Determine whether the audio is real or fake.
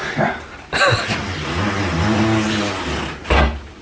real